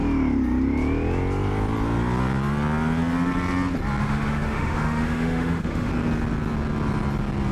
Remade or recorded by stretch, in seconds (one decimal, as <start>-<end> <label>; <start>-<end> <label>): 0.0-4.0 recorded; 4.0-5.9 remade; 5.9-7.5 recorded